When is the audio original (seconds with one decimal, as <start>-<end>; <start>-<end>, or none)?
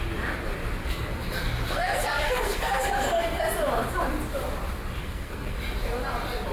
0.0-0.8; 3.4-5.0; 5.6-6.5